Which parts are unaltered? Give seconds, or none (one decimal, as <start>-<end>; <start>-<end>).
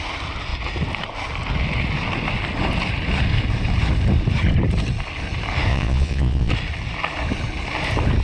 0.0-5.7; 6.5-8.2